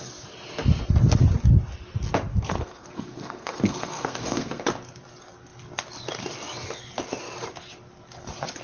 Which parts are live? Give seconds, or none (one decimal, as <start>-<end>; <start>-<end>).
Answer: 0.0-2.3; 4.6-8.6